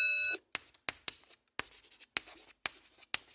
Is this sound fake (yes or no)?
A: no